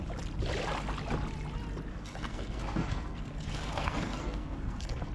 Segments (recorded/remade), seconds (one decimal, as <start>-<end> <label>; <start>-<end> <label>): 0.0-1.9 recorded; 1.9-5.1 remade